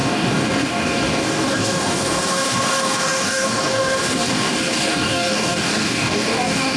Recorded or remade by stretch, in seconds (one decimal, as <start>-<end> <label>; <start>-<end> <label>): 0.0-6.8 remade